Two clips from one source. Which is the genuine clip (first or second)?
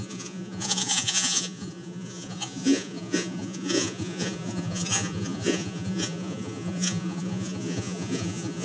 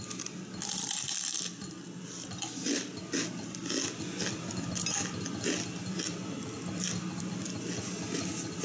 second